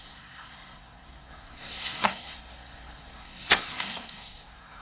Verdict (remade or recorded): remade